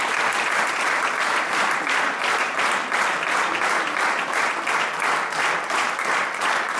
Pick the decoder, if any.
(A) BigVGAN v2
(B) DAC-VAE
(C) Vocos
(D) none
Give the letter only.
A